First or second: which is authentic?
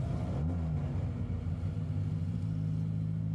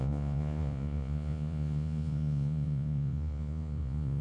first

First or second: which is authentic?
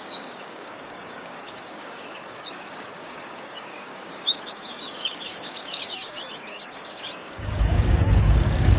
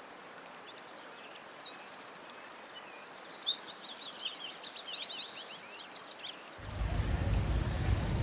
second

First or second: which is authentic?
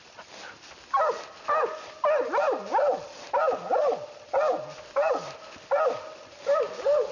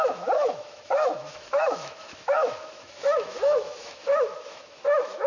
first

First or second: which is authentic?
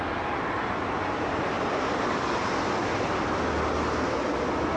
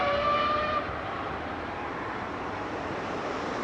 first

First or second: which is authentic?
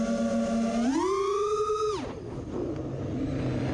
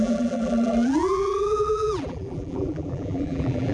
first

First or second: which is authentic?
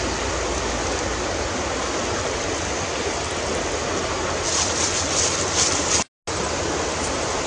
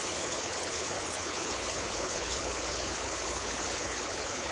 first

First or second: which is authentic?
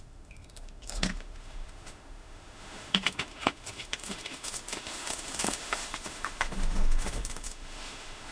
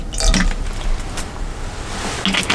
second